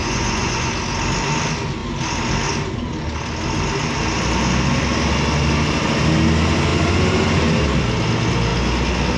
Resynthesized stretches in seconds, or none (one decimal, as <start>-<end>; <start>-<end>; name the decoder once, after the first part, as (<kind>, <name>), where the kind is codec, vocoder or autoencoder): 0.0-0.7 (vocoder, Vocos)